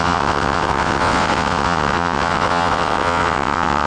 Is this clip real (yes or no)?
no